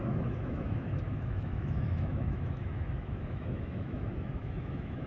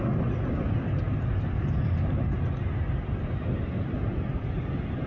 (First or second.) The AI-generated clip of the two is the first